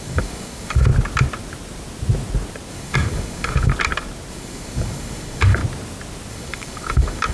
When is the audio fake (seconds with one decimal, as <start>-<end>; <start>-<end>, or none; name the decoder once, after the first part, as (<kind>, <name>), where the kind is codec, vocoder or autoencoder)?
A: 0.0-0.9 (codec, DAC); 2.7-3.7; 4.3-5.6; 6.3-7.3